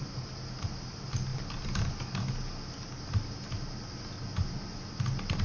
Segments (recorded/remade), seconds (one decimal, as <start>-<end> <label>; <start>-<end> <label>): 0.0-5.4 recorded